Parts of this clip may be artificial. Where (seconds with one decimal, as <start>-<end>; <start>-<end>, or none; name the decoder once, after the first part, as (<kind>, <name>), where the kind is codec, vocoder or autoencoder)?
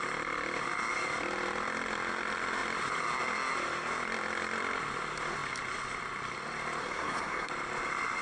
6.8-7.5 (codec, SNAC)